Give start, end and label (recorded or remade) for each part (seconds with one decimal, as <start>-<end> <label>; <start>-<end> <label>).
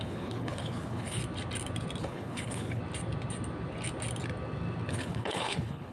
0.0-1.2 remade; 1.2-2.0 recorded; 2.0-2.8 remade; 2.8-4.9 recorded; 4.9-5.9 remade